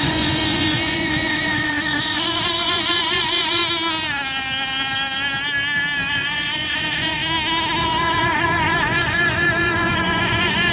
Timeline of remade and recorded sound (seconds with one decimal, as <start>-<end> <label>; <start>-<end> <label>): 0.0-3.6 remade; 3.6-6.1 recorded; 6.1-7.2 remade; 7.2-7.8 recorded; 7.8-10.7 remade